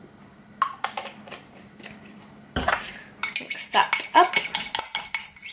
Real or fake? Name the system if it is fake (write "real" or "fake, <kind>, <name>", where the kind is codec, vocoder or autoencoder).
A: real